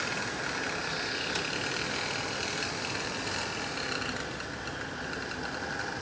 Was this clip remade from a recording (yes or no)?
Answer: no